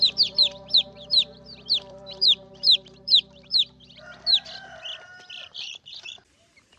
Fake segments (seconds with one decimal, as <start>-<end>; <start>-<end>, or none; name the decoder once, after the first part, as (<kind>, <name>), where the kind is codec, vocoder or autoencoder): 0.0-1.1 (vocoder, BigVGAN v2); 2.1-3.5; 5.4-6.8